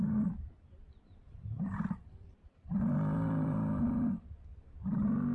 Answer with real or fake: fake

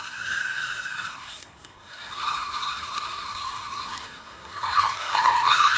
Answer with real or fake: fake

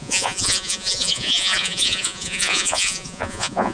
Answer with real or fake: fake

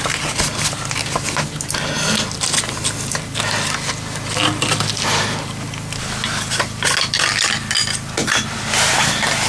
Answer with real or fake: real